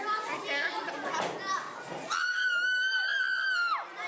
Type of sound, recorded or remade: recorded